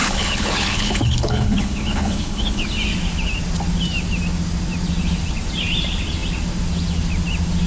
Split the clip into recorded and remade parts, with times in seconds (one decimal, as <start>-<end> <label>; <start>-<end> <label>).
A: 0.0-2.6 remade; 2.6-7.7 recorded